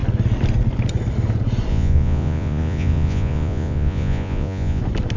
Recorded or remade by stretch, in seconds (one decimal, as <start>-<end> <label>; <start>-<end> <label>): 0.0-1.7 recorded; 1.7-4.8 remade; 4.8-5.2 recorded